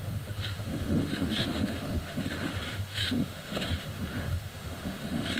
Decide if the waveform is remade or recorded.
remade